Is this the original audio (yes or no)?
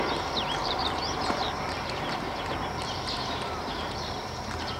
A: no